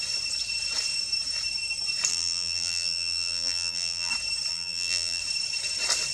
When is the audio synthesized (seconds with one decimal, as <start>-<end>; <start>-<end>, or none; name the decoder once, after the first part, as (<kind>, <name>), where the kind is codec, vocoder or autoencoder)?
2.1-4.1 (vocoder, BigVGAN v2); 4.5-5.2